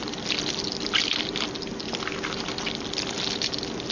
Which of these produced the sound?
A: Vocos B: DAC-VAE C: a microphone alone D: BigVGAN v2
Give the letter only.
C